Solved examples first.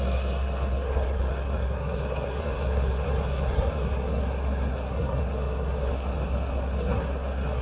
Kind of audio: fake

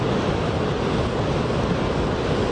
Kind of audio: real